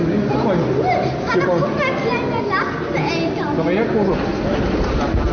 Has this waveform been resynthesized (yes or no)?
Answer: no